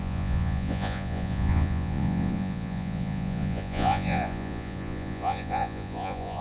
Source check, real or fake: fake